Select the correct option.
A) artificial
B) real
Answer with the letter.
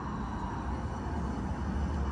B